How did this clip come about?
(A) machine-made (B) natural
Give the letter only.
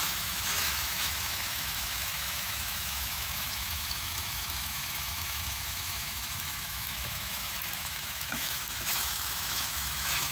A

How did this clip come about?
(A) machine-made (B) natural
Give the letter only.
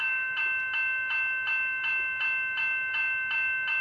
B